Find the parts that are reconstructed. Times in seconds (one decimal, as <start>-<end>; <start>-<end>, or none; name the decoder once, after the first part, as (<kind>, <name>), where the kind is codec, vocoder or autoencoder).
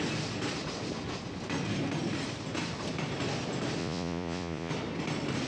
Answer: 3.8-4.7 (vocoder, Vocos)